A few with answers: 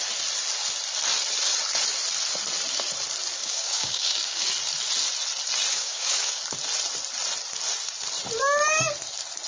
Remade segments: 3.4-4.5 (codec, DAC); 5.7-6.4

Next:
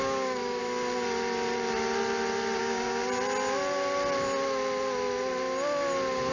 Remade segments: 0.0-0.6 (codec, DAC); 2.6-3.0

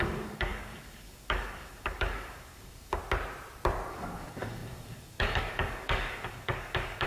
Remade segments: 0.0-3.0 (codec, DAC); 3.9-7.1

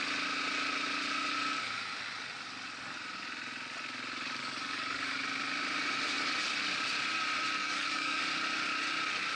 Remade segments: 4.4-5.2 (codec, DAC); 7.6-8.2

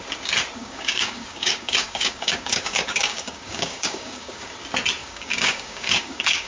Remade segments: 0.6-4.5 (codec, DAC); 5.0-6.5

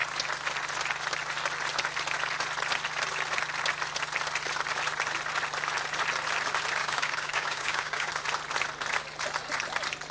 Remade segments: 6.8-8.1 (codec, DAC)

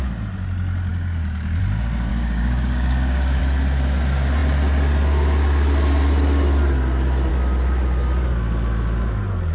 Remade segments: 0.9-1.6 (codec, DAC); 2.1-3.4

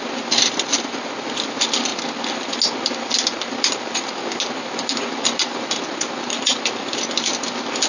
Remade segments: none